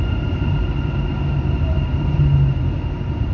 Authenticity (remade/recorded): recorded